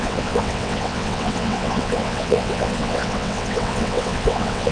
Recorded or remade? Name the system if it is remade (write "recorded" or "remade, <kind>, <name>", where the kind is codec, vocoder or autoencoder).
remade, vocoder, WaveNeXt